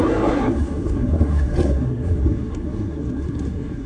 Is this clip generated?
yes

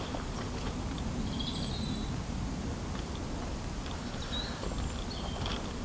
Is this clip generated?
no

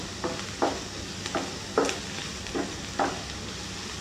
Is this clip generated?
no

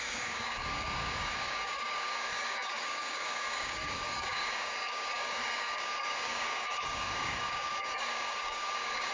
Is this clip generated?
yes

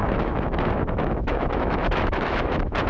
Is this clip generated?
yes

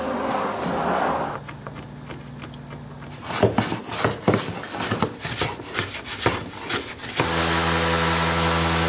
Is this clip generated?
no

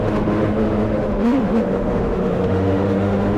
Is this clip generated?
yes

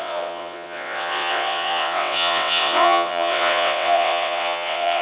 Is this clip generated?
yes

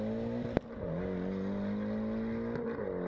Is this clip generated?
no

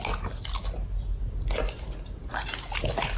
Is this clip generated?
no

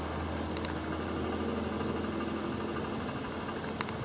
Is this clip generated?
no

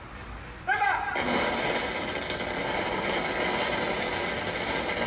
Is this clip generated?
no